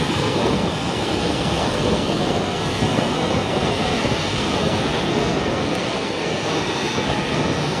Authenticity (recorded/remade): remade